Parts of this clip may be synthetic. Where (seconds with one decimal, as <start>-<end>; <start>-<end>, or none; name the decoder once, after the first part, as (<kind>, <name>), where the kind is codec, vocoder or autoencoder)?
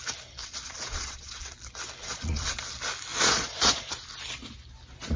0.4-1.4 (vocoder, Vocos); 2.0-2.6; 3.1-3.9